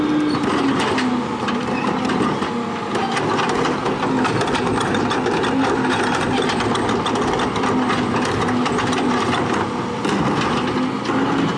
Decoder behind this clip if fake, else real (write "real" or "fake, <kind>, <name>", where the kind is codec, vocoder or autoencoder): real